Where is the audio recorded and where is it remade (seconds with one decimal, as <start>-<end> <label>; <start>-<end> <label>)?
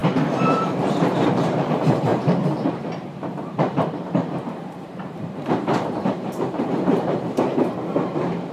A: 0.0-7.5 remade; 7.5-8.0 recorded; 8.0-8.5 remade